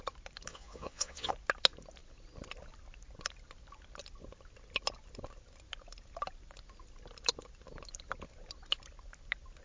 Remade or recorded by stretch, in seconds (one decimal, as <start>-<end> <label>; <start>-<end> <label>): 0.0-0.5 recorded; 0.5-1.3 remade; 1.3-9.6 recorded